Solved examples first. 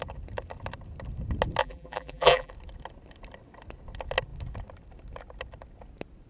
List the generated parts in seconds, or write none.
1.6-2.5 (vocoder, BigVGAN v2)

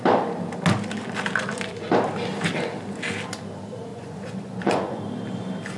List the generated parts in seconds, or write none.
3.9-5.0 (vocoder, Vocos)

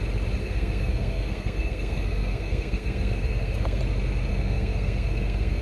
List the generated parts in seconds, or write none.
0.4-3.8 (codec, SNAC); 4.3-5.6

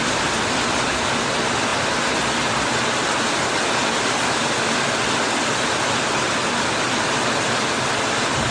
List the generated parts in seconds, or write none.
none

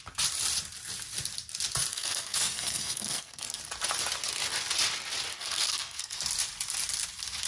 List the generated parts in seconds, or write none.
1.9-3.6 (codec, SNAC); 5.3-6.2

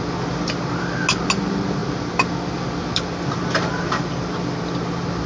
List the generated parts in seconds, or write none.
none

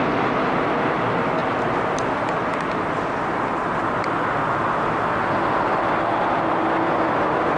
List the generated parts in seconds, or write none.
none